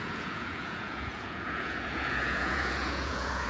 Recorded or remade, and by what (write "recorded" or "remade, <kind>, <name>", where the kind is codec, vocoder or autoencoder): remade, vocoder, Vocos